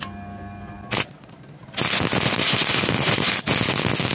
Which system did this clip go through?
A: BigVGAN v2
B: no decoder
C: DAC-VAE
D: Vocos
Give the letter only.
B